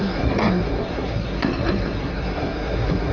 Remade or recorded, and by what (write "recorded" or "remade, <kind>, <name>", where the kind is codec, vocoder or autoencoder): remade, codec, SNAC